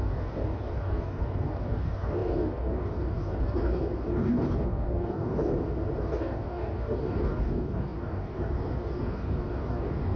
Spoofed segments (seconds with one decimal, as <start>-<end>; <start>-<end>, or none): 0.0-5.5; 6.0-10.2